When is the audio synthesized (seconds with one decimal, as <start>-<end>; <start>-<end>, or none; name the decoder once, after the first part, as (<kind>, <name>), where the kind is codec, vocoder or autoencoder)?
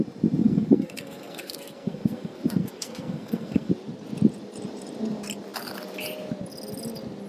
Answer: 0.4-3.7 (codec, SNAC)